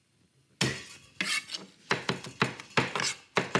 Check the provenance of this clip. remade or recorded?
recorded